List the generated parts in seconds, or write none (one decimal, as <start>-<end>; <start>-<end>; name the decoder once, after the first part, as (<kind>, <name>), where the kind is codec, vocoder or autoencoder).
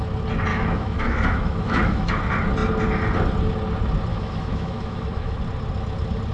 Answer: 0.5-2.2 (autoencoder, DAC-VAE); 4.1-5.4